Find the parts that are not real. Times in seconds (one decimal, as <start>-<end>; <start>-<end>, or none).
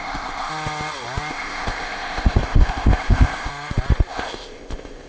0.0-0.5; 1.3-3.5; 4.1-5.1